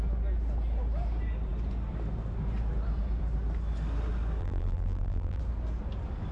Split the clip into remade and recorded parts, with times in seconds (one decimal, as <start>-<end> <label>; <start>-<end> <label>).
0.0-4.4 recorded; 4.4-5.4 remade; 5.4-6.3 recorded